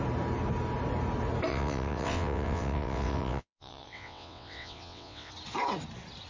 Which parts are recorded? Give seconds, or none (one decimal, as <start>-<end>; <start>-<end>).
0.0-1.5; 5.3-6.3